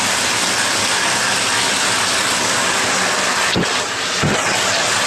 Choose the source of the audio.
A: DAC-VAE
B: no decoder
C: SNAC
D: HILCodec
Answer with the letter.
B